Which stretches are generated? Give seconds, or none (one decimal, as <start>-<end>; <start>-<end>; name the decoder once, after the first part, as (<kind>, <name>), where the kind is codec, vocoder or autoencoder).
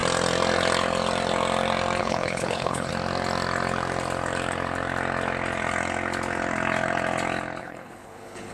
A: 2.0-2.9 (codec, HILCodec); 7.6-8.5